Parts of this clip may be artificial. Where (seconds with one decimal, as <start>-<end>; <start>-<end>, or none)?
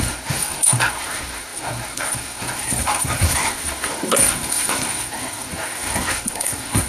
0.0-6.9